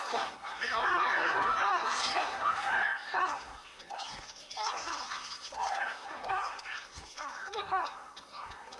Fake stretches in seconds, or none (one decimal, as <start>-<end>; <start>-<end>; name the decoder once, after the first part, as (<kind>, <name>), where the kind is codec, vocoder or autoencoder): 0.0-8.8 (codec, SNAC)